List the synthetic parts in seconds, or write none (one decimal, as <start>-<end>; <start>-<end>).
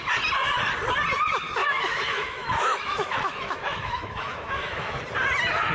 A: 1.6-5.0